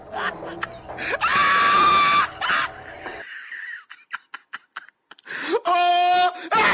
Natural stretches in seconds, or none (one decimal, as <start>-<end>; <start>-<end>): 0.0-6.7